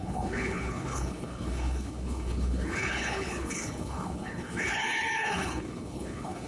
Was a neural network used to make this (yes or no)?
yes